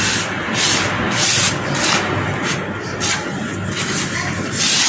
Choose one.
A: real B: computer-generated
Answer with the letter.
A